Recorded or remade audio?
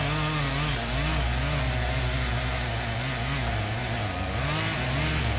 recorded